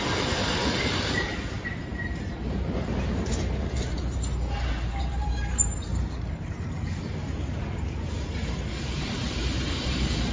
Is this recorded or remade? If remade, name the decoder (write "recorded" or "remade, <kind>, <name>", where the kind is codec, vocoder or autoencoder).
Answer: remade, vocoder, BigVGAN v2